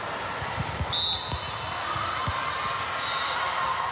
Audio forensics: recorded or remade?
recorded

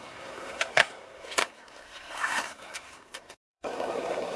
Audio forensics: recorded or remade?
remade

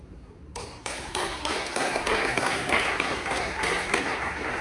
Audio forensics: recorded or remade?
remade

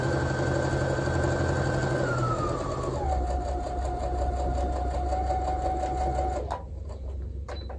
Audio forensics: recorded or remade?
recorded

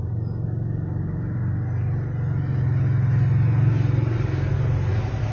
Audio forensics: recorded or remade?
recorded